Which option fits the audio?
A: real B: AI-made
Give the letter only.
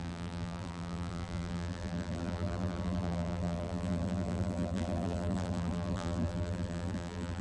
B